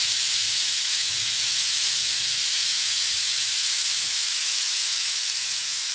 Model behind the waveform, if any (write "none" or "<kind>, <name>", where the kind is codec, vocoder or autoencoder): autoencoder, DAC-VAE